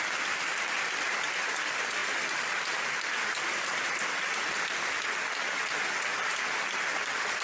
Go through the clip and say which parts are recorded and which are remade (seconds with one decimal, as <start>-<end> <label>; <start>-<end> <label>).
0.0-7.4 recorded